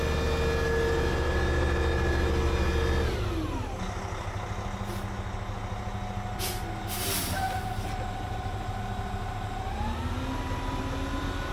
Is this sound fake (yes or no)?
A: no